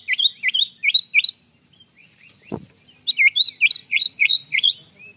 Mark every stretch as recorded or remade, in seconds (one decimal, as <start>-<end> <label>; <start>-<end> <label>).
0.0-2.0 recorded; 2.0-2.7 remade; 2.7-3.8 recorded; 3.8-4.7 remade; 4.7-5.2 recorded